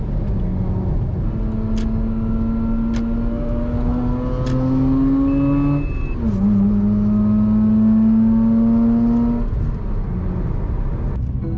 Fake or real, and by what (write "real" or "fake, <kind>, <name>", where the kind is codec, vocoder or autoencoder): real